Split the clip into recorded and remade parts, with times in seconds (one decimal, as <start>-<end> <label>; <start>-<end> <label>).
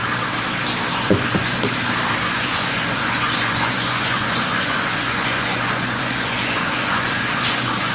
0.0-0.9 recorded; 0.9-1.6 remade; 1.6-2.2 recorded; 2.2-7.9 remade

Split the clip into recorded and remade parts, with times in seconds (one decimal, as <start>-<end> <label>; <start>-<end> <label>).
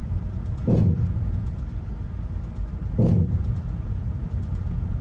0.0-1.6 remade; 1.6-2.8 recorded; 2.8-5.0 remade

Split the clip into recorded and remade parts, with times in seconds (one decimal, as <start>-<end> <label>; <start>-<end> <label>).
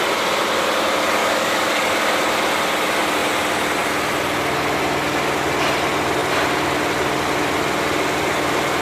0.0-1.2 recorded; 1.2-2.0 remade; 2.0-8.8 recorded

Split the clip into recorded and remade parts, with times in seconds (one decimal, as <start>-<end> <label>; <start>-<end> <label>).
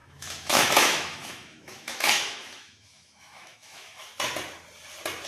0.0-4.1 remade; 4.1-5.3 recorded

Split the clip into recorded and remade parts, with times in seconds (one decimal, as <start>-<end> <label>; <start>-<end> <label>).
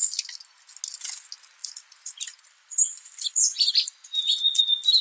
0.0-1.6 recorded; 1.6-4.6 remade; 4.6-5.0 recorded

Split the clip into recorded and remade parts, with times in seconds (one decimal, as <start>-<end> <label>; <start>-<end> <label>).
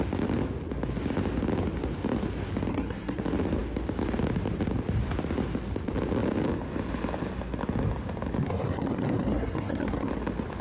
0.0-2.7 recorded; 2.7-3.2 remade; 3.2-8.4 recorded; 8.4-10.1 remade; 10.1-10.6 recorded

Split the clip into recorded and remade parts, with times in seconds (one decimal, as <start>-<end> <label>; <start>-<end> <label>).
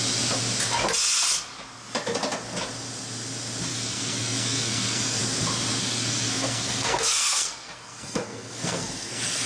0.0-3.7 recorded; 3.7-5.2 remade; 5.2-5.8 recorded; 5.8-9.5 remade